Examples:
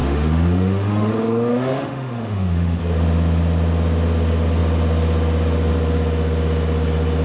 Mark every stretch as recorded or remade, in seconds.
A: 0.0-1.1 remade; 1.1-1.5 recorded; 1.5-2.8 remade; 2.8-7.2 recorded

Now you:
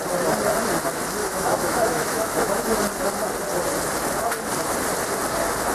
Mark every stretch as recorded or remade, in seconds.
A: 0.0-1.2 recorded; 1.2-2.8 remade; 2.8-5.7 recorded